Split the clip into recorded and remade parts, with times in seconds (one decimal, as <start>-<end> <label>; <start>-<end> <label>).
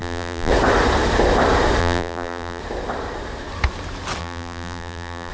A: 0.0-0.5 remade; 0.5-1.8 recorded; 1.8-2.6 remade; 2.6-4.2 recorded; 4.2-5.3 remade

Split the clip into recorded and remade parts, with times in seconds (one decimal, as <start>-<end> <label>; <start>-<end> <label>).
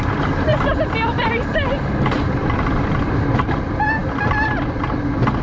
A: 0.0-0.5 remade; 0.5-1.2 recorded; 1.2-4.0 remade; 4.0-5.4 recorded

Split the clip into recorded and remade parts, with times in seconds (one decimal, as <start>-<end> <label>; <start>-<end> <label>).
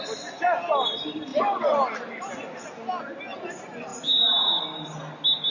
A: 0.0-1.3 recorded; 1.3-2.3 remade; 2.3-5.5 recorded